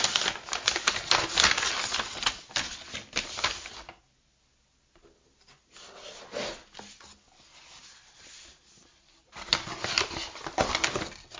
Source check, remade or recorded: recorded